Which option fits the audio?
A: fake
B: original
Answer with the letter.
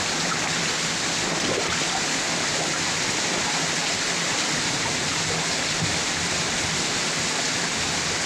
B